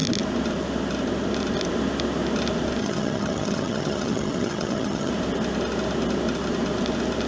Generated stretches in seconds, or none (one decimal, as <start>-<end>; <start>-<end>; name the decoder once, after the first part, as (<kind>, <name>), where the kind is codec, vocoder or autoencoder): 2.8-5.1 (vocoder, HiFi-GAN)